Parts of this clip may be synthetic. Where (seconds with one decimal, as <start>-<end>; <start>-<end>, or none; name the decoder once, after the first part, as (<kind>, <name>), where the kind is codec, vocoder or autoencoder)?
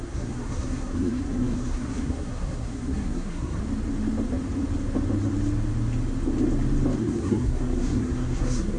0.0-3.6 (codec, SNAC); 7.0-8.8